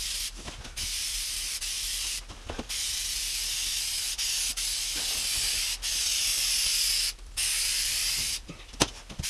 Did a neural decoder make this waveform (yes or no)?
yes